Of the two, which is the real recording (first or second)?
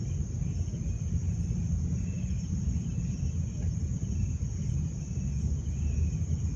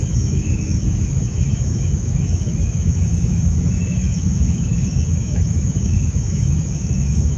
first